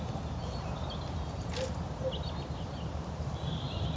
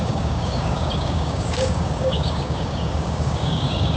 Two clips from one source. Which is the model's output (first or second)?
second